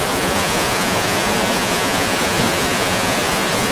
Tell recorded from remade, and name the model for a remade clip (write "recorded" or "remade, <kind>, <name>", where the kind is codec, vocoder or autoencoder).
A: remade, vocoder, Vocos